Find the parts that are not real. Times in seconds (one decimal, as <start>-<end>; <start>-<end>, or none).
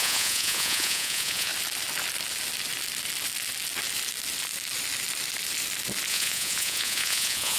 0.0-1.5; 6.1-7.6